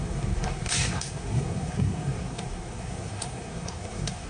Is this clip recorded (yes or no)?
no